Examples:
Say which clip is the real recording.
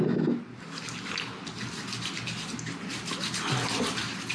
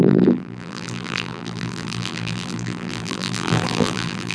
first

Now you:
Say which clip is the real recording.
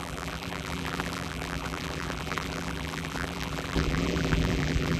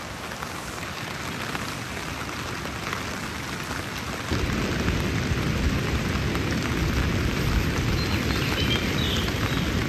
second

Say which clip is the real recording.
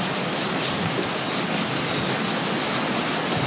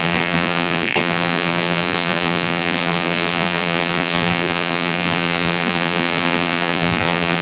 first